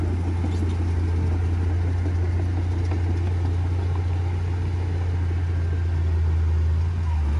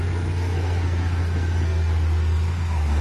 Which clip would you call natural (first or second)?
first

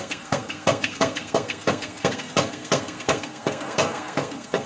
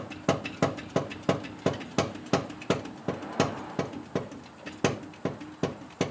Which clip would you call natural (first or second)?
second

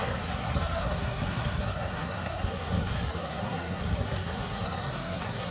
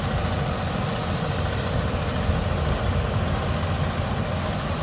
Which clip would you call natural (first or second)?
second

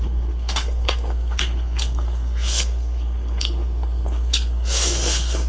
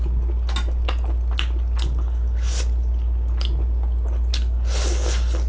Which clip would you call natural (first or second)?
second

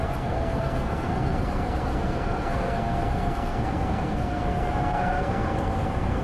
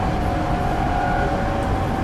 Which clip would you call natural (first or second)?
second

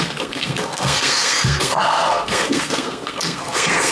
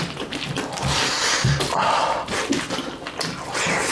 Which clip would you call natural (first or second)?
second